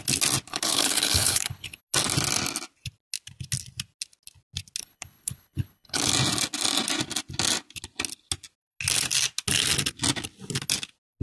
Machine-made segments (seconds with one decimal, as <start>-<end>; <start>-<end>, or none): 0.5-1.8; 4.8-6.1